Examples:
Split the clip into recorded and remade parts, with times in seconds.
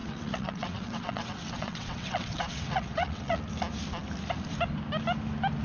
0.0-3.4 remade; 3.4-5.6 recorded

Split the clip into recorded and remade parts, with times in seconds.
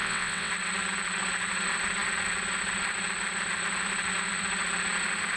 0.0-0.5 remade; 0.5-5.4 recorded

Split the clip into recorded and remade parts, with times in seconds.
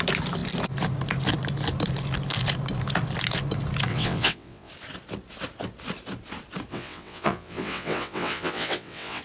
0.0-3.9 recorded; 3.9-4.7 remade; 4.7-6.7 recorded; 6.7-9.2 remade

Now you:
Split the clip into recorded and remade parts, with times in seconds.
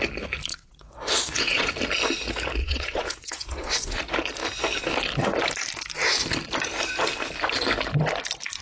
0.0-0.5 recorded; 0.5-1.7 remade; 1.7-2.6 recorded; 2.6-4.0 remade; 4.0-8.6 recorded